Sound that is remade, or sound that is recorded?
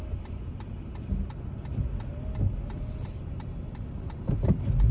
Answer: recorded